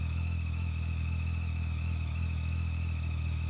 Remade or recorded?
remade